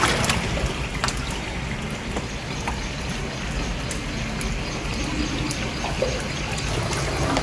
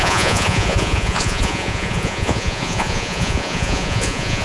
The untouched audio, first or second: first